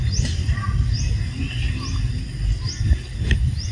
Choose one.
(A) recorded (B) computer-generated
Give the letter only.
A